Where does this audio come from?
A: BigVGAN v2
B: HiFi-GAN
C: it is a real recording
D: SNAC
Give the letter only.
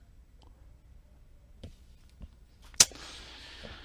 C